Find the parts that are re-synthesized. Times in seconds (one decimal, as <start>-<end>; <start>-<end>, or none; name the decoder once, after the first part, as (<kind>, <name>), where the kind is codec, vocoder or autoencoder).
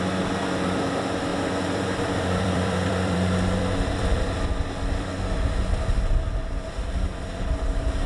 1.3-5.1 (vocoder, BigVGAN v2)